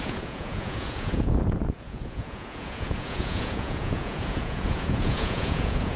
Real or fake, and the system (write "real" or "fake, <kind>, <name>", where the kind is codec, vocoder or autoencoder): fake, vocoder, Vocos